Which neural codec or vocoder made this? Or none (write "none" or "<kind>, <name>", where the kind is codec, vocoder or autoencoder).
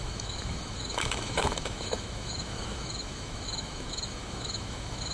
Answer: autoencoder, DAC-VAE